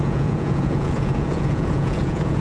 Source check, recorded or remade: remade